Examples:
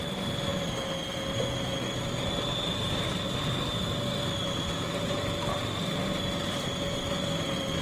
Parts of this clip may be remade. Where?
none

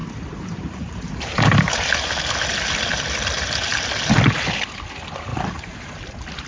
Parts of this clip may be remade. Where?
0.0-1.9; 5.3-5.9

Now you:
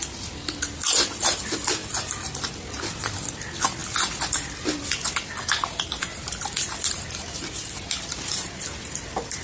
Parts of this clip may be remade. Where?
1.8-2.4

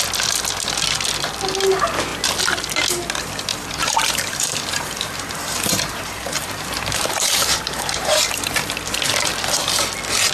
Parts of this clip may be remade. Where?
3.5-8.7

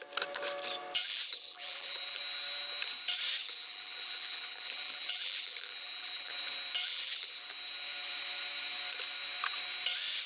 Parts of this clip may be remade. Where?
1.0-2.2; 3.4-6.3; 6.8-7.4

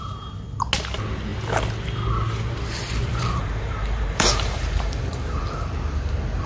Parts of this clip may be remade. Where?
3.0-5.7